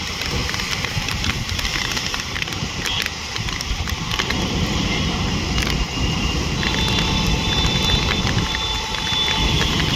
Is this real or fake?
fake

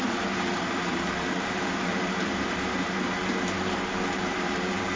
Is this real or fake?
fake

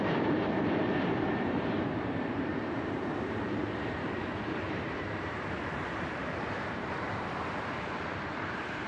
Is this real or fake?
fake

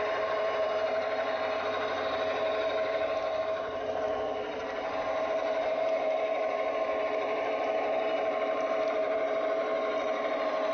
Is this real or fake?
fake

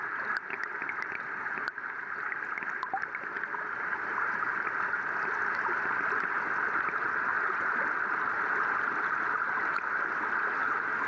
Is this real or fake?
real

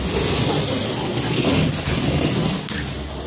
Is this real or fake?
real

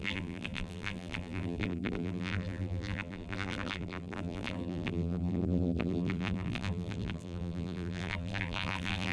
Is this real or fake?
fake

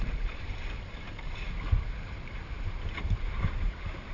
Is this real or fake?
fake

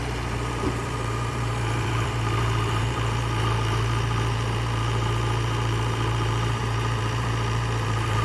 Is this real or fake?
fake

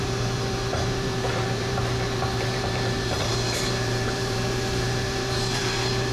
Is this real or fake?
fake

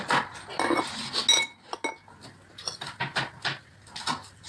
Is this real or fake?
real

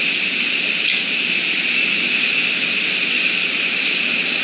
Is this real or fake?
real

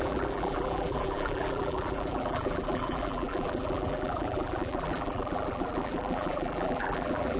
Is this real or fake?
fake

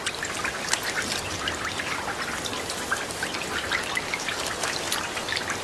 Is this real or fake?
real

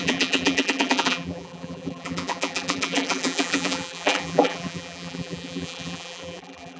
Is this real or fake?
fake